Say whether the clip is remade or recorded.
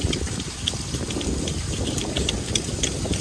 recorded